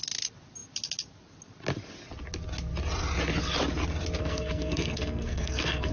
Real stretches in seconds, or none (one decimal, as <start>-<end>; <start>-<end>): 0.0-4.2